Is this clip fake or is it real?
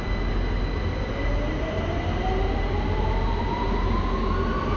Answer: real